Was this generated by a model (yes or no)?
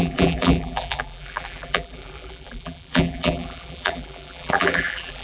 yes